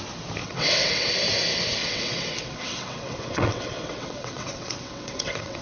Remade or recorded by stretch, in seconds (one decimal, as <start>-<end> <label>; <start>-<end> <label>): 0.0-0.4 recorded; 0.4-1.1 remade; 1.1-1.8 recorded; 1.8-5.6 remade